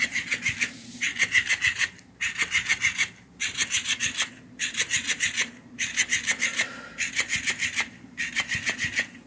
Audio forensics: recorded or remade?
remade